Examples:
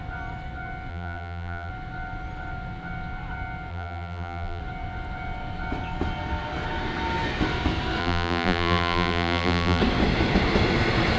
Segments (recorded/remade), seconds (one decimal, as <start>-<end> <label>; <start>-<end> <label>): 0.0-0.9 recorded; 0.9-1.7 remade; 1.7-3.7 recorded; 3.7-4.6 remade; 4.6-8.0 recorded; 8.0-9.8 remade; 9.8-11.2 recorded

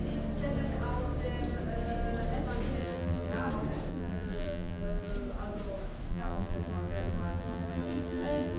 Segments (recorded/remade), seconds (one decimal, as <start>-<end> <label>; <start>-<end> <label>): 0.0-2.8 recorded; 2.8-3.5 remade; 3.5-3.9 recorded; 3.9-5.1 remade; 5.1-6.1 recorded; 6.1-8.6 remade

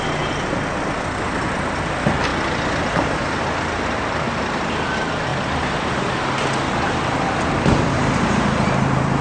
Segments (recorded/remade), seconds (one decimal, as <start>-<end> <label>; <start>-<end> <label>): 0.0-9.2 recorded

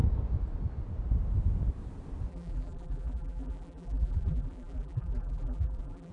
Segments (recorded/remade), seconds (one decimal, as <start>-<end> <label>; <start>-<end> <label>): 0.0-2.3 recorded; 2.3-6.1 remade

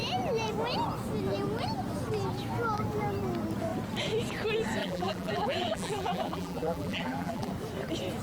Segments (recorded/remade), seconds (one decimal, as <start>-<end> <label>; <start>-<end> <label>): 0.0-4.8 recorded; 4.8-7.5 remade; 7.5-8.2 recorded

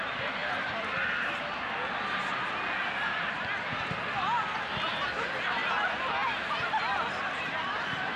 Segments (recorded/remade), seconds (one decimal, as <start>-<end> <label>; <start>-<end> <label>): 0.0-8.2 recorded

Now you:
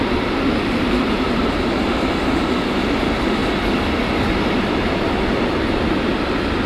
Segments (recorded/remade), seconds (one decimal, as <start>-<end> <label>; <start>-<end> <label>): 0.0-3.4 remade; 3.4-4.2 recorded; 4.2-6.7 remade

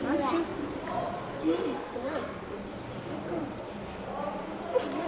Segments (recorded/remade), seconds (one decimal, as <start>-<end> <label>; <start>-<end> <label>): 0.0-0.5 recorded; 0.5-3.6 remade; 3.6-5.1 recorded